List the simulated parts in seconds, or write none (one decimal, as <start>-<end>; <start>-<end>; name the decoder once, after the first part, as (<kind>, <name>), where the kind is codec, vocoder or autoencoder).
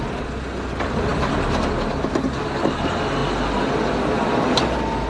none